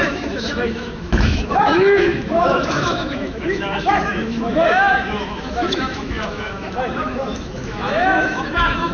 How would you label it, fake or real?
fake